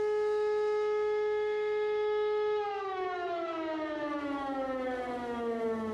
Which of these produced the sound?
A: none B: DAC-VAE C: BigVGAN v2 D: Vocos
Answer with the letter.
B